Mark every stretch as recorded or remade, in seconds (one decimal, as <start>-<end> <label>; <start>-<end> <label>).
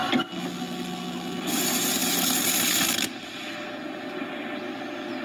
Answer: 0.0-5.2 recorded